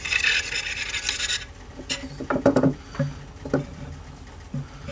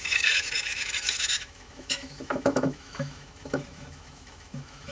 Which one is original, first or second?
first